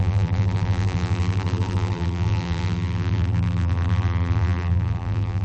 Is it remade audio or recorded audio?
remade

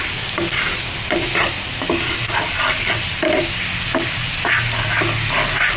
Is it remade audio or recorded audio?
recorded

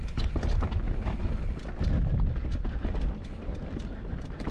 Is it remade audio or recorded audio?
recorded